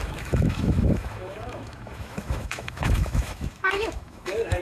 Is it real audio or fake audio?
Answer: fake